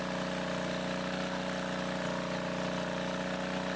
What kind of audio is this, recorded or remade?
recorded